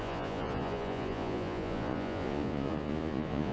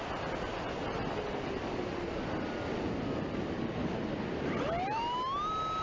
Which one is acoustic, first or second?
second